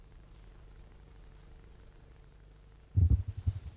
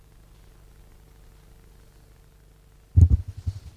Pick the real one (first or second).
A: second